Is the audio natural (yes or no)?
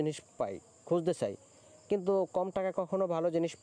yes